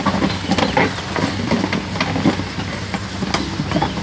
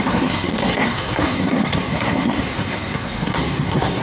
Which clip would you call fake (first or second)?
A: second